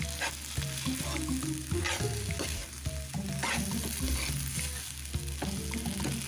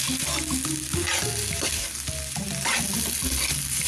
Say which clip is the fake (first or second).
second